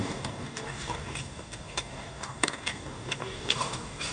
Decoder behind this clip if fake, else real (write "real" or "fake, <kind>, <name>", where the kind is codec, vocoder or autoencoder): fake, codec, DAC